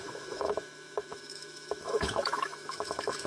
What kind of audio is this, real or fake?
fake